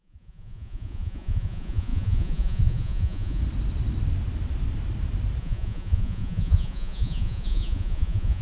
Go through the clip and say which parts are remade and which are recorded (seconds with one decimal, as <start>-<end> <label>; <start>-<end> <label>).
0.0-3.4 remade; 3.4-5.4 recorded; 5.4-8.4 remade